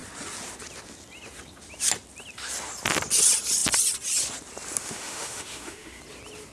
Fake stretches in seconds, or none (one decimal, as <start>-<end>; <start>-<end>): 4.8-6.0